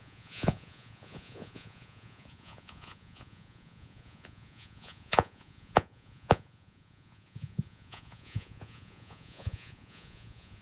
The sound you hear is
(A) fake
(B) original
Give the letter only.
A